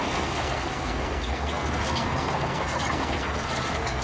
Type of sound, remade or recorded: remade